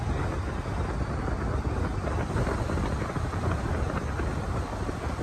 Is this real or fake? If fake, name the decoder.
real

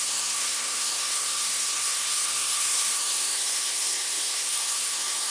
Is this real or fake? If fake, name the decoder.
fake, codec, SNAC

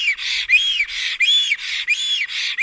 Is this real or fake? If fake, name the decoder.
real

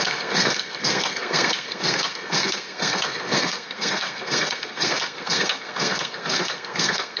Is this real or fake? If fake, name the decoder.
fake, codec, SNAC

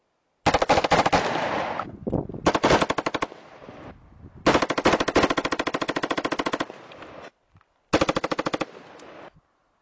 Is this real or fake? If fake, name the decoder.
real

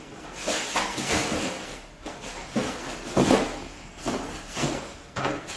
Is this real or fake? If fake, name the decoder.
fake, codec, SNAC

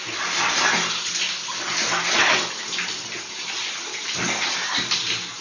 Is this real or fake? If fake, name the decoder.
real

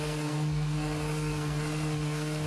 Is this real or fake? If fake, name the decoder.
fake, codec, SNAC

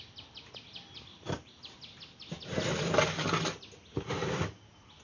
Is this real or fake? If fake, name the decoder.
real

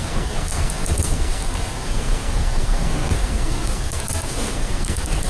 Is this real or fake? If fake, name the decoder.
fake, codec, SNAC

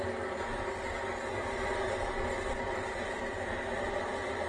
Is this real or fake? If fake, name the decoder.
real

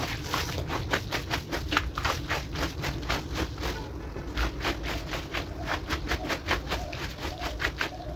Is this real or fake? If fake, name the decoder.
real